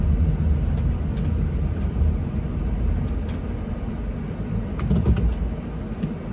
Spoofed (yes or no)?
no